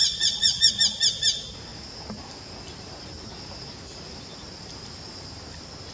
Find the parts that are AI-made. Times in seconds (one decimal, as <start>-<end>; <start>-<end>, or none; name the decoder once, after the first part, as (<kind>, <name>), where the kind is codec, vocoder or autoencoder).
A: 0.0-0.7 (vocoder, Vocos)